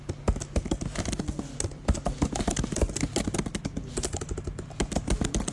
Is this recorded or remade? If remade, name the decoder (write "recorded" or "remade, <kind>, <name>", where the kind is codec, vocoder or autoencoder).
recorded